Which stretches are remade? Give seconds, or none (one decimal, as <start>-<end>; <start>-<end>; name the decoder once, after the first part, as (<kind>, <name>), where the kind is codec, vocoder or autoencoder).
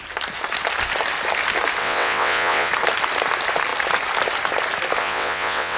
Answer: 1.8-2.7 (vocoder, WaveNeXt); 5.0-5.8